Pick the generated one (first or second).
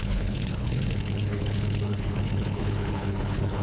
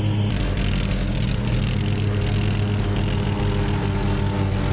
first